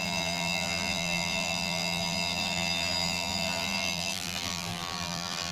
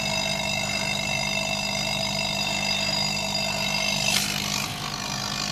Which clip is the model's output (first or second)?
first